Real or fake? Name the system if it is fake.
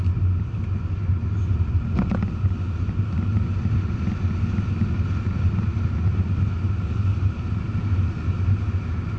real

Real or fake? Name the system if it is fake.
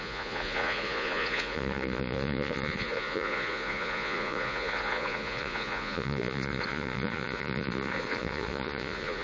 fake, vocoder, Vocos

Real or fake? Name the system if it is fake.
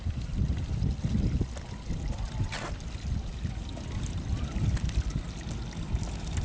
fake, vocoder, BigVGAN v2